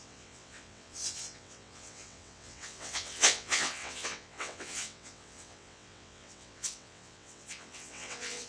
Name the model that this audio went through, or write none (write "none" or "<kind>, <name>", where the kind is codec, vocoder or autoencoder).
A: vocoder, WaveNeXt